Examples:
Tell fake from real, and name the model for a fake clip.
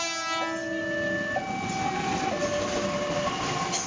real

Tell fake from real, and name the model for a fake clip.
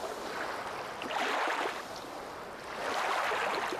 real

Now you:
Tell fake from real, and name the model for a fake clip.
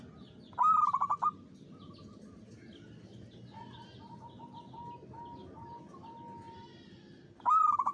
real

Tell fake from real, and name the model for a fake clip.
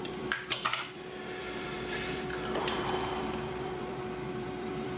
fake, vocoder, BigVGAN v2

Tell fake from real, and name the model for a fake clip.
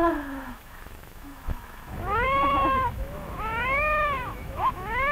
fake, autoencoder, DAC-VAE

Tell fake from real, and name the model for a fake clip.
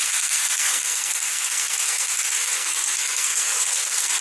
fake, codec, SNAC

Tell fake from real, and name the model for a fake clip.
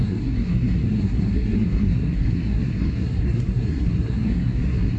fake, codec, SNAC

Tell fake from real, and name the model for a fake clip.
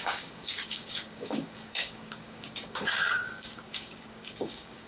fake, codec, DAC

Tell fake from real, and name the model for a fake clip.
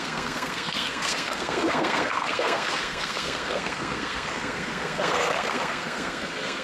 fake, codec, SNAC